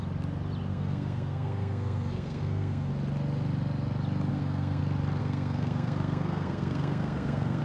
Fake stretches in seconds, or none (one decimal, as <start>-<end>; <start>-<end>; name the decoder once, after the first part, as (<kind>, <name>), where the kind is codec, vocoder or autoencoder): 0.7-2.9 (codec, SNAC); 4.3-4.8; 5.2-7.6